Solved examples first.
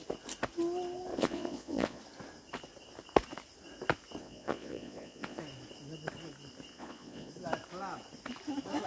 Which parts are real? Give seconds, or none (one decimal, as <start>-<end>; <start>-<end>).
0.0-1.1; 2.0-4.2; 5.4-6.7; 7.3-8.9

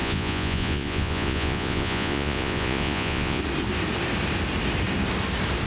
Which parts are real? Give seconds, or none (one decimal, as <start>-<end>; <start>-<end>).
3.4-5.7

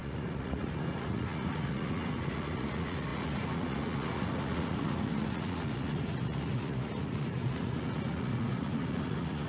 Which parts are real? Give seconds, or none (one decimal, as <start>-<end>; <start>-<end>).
none

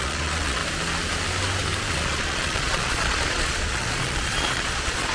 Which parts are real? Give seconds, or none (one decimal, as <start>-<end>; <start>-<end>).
0.6-1.9

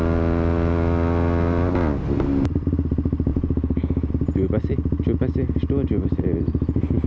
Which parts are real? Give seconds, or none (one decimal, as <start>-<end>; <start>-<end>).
0.0-3.3; 4.1-7.1

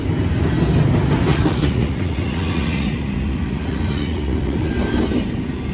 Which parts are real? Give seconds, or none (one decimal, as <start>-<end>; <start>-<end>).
0.0-1.3; 4.7-5.7

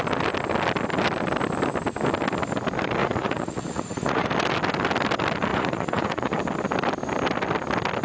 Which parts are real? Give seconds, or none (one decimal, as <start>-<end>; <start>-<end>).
0.0-3.0; 4.3-5.5; 6.4-8.0

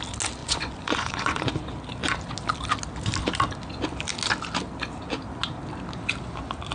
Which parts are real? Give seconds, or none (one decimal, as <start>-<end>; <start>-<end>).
0.0-0.4; 1.5-6.7